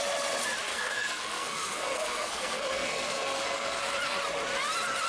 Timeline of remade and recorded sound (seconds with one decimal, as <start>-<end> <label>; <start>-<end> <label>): 0.0-0.7 recorded; 0.7-3.8 remade; 3.8-5.1 recorded